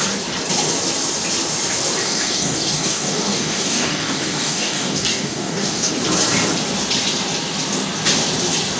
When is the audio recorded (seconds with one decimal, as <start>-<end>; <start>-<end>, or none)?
0.0-2.0; 5.9-8.8